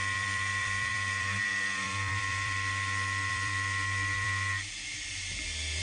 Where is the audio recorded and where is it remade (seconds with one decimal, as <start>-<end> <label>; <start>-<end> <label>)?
0.0-5.1 remade; 5.1-5.8 recorded

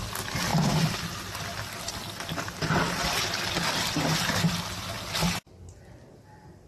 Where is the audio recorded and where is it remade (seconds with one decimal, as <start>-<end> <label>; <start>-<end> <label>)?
0.0-0.5 recorded; 0.5-1.0 remade; 1.0-4.1 recorded; 4.1-4.9 remade; 4.9-6.7 recorded

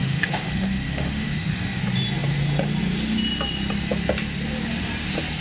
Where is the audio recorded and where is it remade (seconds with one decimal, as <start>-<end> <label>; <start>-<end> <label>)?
0.0-1.8 remade; 1.8-5.4 recorded

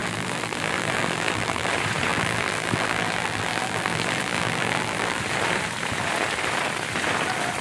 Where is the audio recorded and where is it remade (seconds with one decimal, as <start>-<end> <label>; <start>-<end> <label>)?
0.0-1.7 remade; 1.7-2.1 recorded; 2.1-5.2 remade; 5.2-7.6 recorded

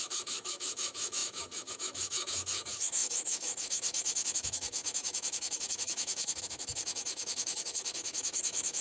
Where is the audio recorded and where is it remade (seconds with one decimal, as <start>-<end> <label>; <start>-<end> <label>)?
0.0-8.8 remade